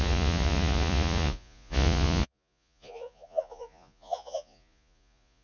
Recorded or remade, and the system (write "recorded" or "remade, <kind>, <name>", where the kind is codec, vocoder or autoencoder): remade, vocoder, Vocos